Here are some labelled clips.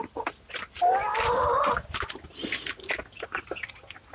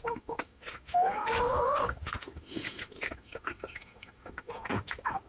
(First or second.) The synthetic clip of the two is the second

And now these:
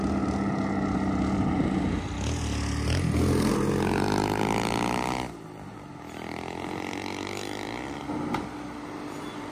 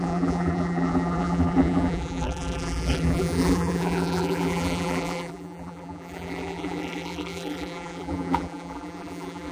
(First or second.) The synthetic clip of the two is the second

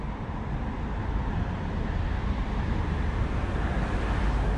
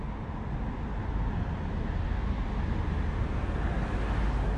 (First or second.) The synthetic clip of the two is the first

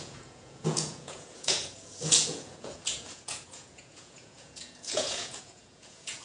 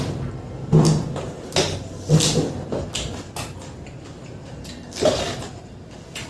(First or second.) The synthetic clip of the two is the first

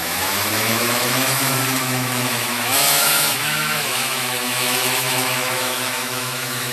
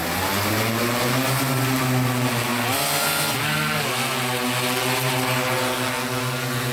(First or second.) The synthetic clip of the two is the first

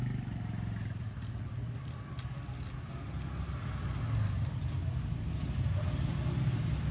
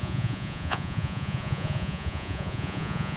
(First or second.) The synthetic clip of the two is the second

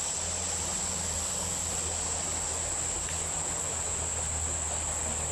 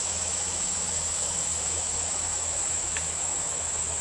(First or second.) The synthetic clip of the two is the second